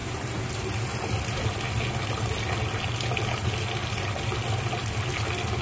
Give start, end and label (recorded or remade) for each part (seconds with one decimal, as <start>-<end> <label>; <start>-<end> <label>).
0.0-5.6 recorded

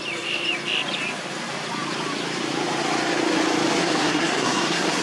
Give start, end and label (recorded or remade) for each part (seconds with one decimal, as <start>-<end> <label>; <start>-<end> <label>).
0.0-3.8 recorded; 3.8-5.0 remade

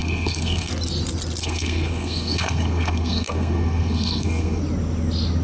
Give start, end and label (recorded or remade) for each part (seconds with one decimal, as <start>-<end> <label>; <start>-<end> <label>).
0.0-0.7 remade; 0.7-1.4 recorded; 1.4-4.6 remade; 4.6-5.4 recorded